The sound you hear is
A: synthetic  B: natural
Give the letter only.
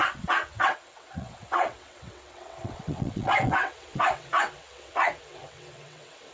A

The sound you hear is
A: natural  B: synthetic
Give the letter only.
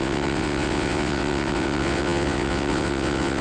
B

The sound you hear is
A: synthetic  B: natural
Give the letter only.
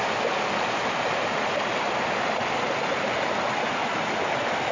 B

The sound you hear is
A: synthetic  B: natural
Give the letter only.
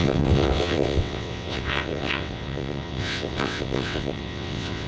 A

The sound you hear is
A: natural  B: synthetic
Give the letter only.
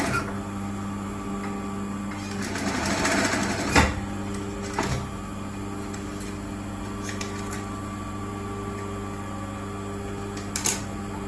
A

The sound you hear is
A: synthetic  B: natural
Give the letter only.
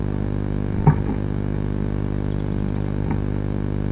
B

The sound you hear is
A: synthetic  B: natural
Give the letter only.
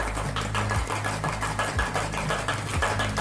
B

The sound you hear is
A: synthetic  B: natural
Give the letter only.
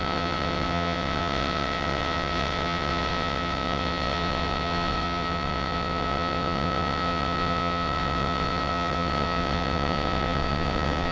A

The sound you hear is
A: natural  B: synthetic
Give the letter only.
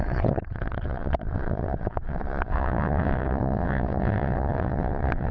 B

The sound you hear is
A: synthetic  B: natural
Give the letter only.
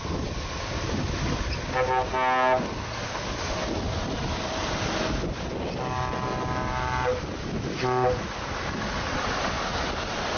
B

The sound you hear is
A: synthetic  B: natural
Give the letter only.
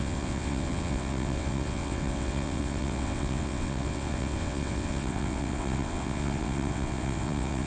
A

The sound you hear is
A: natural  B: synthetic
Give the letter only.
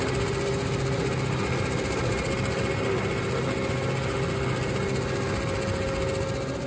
A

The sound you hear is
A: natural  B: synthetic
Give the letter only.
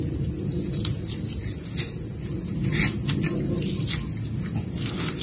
A